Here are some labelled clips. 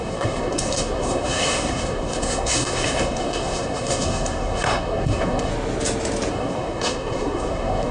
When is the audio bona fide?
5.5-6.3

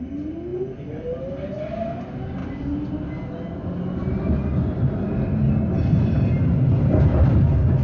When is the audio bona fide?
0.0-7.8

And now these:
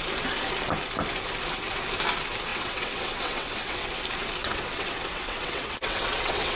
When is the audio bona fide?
0.0-2.5; 3.9-4.4